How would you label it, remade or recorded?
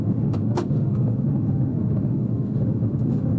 remade